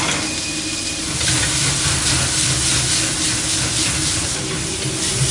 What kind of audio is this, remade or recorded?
recorded